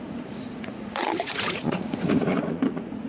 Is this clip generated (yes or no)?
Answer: yes